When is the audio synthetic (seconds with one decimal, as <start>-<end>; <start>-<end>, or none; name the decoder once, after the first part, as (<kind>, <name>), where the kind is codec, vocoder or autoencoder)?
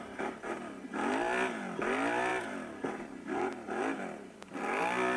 none